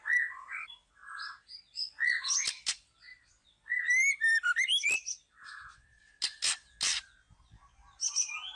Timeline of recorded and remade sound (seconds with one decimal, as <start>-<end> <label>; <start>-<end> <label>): 0.0-3.1 recorded; 3.1-6.0 remade; 6.0-8.6 recorded